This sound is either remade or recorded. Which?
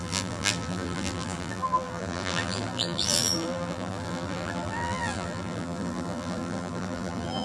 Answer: remade